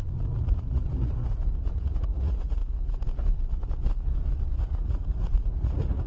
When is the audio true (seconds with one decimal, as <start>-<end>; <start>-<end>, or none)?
1.2-1.7; 2.6-4.6